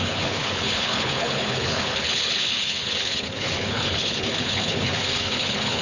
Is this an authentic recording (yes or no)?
no